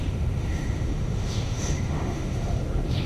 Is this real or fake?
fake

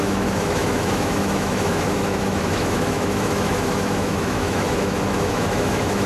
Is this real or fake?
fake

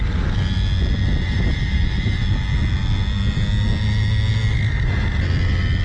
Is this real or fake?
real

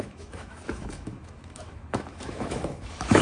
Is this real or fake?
fake